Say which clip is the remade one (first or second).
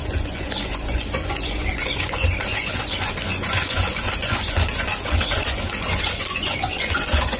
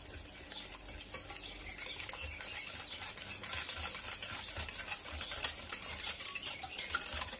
first